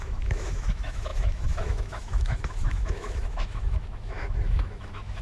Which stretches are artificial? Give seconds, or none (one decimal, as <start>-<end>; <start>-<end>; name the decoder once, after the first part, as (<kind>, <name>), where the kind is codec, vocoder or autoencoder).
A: 0.0-5.2 (autoencoder, DAC-VAE)